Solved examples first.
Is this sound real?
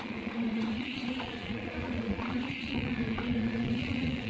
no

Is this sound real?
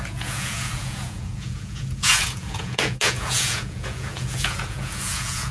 no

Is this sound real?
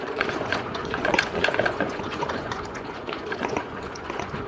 no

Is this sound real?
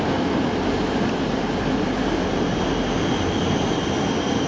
yes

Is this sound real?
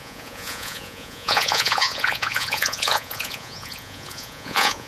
no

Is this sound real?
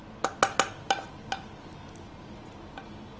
yes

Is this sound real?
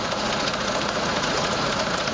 no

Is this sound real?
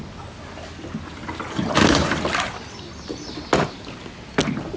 yes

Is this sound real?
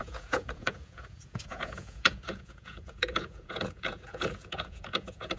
no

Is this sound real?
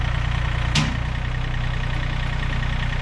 yes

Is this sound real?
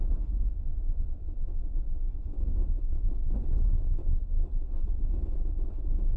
yes